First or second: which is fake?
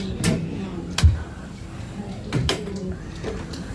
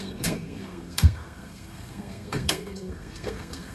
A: second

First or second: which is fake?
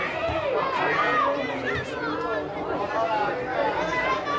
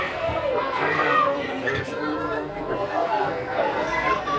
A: second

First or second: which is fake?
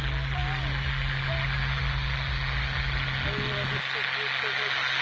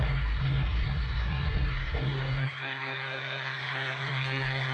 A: second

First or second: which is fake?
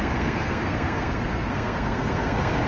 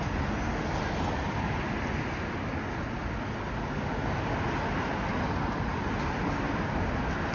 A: first